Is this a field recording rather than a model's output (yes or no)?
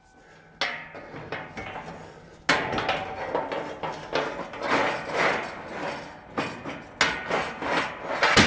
yes